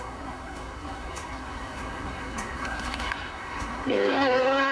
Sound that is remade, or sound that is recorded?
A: remade